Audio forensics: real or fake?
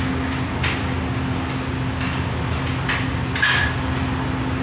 real